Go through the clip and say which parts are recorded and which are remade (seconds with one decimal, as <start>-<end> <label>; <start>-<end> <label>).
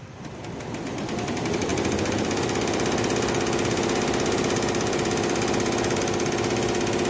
0.0-1.7 recorded; 1.7-6.0 remade; 6.0-7.1 recorded